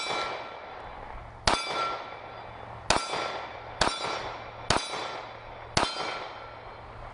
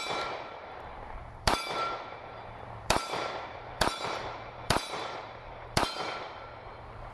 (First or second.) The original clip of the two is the first